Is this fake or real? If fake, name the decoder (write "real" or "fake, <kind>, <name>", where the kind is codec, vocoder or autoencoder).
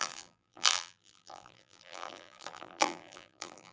fake, vocoder, BigVGAN v2